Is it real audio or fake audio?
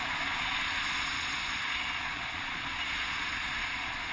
fake